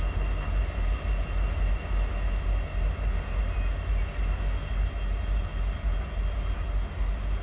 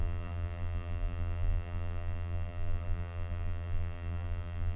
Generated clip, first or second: second